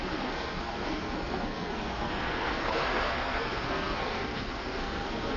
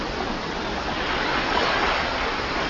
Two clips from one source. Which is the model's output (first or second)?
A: first